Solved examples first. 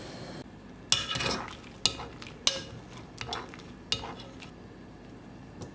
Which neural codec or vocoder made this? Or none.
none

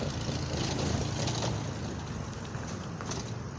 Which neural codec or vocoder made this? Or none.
none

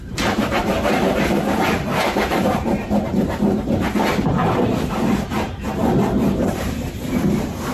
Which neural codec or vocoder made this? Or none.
vocoder, BigVGAN v2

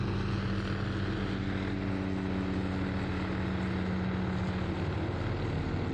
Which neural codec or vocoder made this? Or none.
none